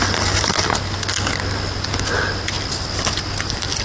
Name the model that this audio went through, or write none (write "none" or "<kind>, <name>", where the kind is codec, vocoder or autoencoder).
none